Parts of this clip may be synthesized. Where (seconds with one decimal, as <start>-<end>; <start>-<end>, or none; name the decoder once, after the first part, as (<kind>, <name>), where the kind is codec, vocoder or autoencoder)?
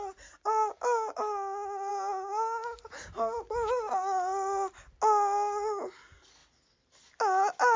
none